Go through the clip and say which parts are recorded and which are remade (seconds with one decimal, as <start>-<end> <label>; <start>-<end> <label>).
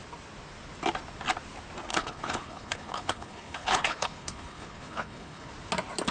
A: 0.0-1.9 recorded; 1.9-5.5 remade; 5.5-6.1 recorded